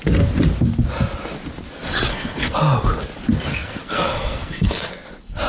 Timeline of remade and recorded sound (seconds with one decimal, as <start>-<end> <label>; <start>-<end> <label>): 0.0-2.1 recorded; 2.1-2.6 remade; 2.6-3.5 recorded; 3.5-5.1 remade; 5.1-5.5 recorded